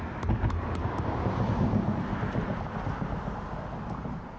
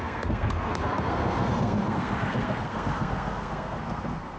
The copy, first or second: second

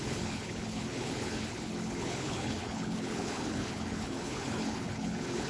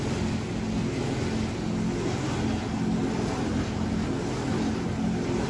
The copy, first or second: first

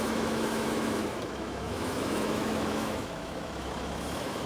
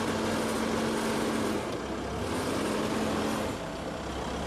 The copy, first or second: first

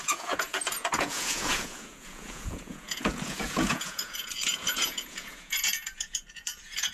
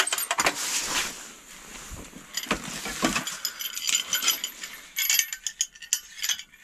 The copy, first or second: first